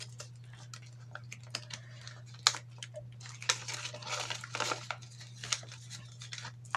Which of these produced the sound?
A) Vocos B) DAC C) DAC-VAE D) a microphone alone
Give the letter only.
D